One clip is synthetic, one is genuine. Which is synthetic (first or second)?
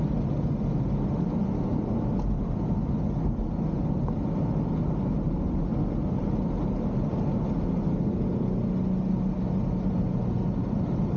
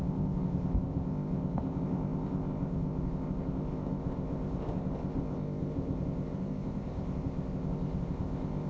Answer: second